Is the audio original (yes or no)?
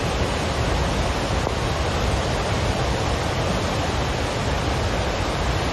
yes